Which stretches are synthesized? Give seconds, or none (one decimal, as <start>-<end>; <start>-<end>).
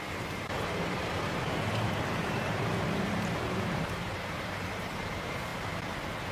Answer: 0.0-5.5